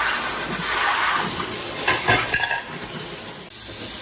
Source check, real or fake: real